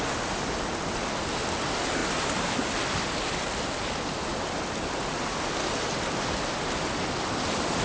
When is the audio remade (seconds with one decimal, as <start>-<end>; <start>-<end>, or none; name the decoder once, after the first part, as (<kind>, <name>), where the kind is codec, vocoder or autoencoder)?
none